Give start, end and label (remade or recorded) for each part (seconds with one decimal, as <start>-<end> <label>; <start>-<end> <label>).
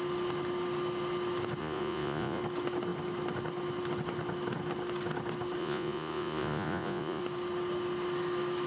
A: 0.0-1.6 recorded; 1.6-2.4 remade; 2.4-5.6 recorded; 5.6-7.2 remade; 7.2-8.7 recorded